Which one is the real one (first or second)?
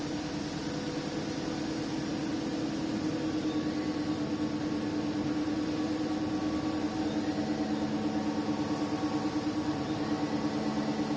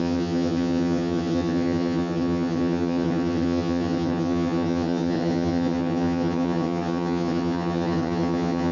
first